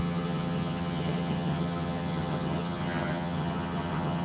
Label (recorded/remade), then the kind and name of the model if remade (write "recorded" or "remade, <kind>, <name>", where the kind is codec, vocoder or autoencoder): remade, vocoder, HiFi-GAN